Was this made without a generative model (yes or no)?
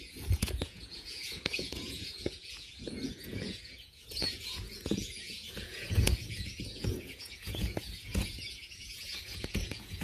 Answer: no